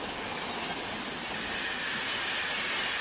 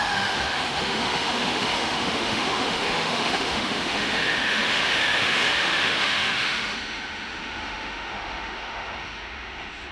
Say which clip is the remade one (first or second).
second